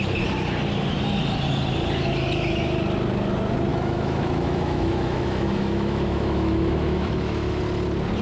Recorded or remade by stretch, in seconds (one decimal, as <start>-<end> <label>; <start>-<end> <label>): 0.0-3.7 recorded; 3.7-7.6 remade; 7.6-8.2 recorded